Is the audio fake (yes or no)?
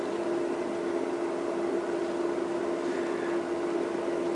no